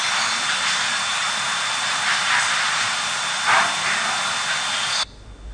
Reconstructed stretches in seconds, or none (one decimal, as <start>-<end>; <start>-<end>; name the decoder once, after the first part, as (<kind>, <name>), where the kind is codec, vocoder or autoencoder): 1.1-4.4 (vocoder, BigVGAN v2)